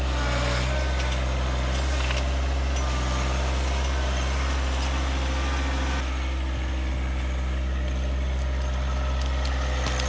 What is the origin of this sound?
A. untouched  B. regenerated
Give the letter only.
A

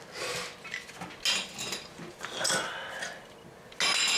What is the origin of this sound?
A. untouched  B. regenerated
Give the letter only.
A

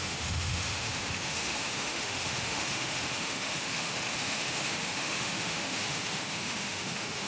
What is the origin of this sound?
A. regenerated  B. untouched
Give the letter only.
A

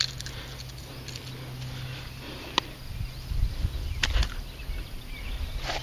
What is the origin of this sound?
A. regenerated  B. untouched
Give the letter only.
B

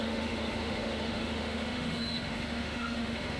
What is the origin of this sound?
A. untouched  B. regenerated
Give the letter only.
B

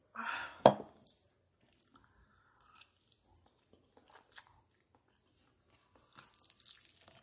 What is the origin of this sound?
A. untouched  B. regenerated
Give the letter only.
A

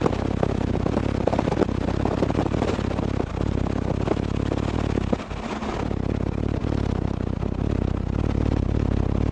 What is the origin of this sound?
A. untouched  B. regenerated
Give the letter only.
A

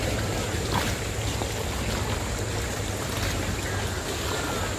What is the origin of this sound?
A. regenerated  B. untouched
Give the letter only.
B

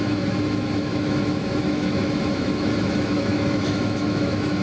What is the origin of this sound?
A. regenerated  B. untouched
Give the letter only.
A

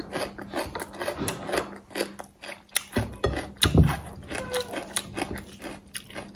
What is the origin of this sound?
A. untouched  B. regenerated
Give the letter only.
A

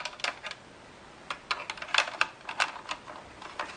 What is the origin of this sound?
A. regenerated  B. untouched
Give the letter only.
B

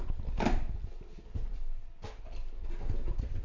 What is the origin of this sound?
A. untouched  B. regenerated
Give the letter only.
A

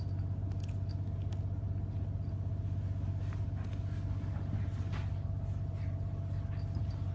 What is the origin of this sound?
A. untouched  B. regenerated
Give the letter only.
A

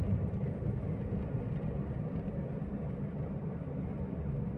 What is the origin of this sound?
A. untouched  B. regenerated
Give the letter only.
A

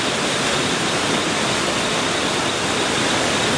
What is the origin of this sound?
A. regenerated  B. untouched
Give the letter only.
B